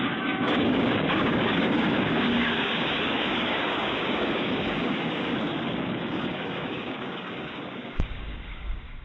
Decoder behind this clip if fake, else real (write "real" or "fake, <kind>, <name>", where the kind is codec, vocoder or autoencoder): fake, codec, DAC